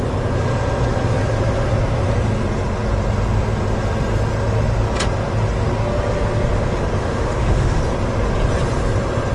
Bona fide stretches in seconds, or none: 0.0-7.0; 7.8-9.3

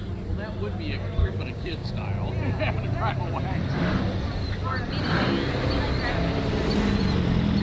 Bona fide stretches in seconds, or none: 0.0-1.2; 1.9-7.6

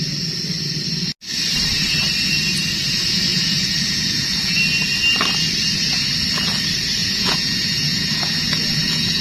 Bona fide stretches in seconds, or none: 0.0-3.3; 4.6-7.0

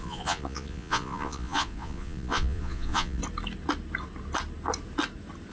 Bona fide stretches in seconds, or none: 3.2-5.5

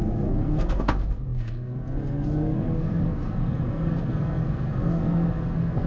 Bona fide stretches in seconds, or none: none

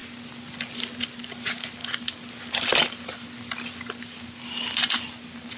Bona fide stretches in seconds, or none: 0.0-5.6

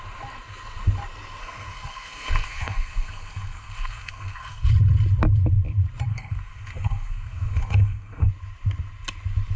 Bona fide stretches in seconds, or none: 0.0-1.4; 4.7-6.1; 8.3-9.6

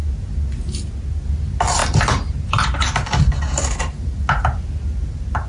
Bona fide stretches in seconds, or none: 0.0-5.5